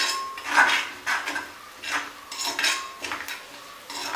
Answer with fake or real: real